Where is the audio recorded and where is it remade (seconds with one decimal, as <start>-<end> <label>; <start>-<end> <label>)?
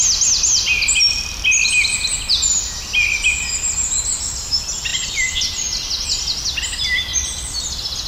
0.0-4.9 recorded; 4.9-5.7 remade; 5.7-8.1 recorded